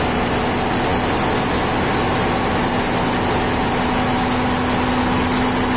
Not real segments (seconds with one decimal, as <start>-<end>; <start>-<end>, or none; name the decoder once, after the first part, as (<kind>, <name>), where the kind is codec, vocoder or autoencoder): none